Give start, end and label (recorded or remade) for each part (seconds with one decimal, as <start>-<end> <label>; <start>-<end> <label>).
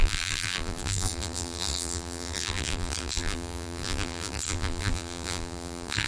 0.0-6.1 remade